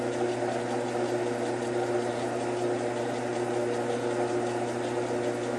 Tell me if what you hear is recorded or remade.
recorded